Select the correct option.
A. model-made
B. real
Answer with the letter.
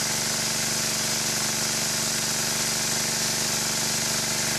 B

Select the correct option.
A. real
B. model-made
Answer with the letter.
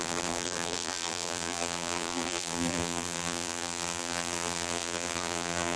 B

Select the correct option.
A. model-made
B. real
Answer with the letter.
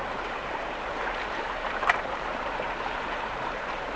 A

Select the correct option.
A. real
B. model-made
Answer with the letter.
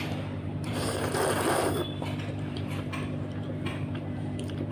B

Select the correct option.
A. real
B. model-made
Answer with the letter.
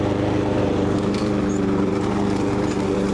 B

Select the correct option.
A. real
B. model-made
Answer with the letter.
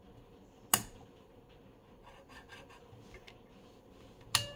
A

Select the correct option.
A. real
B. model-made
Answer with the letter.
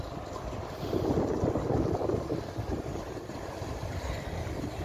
A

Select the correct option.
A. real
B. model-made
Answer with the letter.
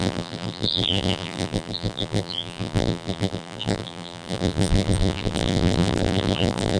B